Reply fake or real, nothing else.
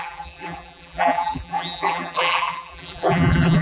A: fake